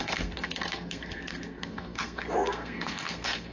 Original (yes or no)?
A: no